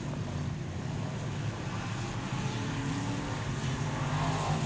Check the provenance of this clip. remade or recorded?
recorded